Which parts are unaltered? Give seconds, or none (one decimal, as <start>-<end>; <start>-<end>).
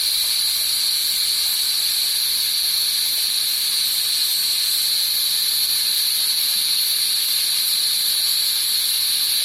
0.0-4.4; 8.1-9.4